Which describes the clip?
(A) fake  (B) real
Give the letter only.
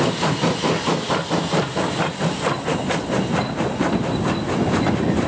B